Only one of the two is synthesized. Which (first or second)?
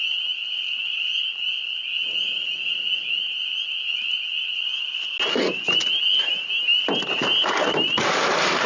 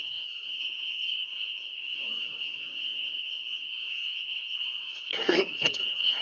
second